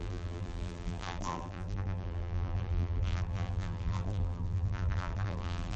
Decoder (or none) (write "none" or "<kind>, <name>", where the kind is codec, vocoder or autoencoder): vocoder, BigVGAN v2